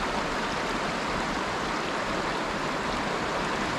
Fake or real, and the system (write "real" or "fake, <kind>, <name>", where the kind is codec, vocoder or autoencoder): fake, vocoder, BigVGAN v2